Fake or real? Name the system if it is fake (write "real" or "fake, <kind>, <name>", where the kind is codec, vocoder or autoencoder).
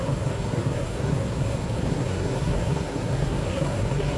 fake, codec, SNAC